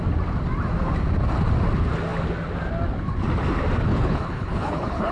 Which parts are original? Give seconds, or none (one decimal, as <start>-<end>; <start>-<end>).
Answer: 0.0-3.9